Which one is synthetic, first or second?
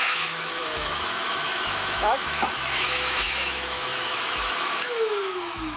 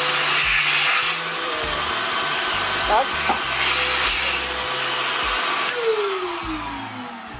first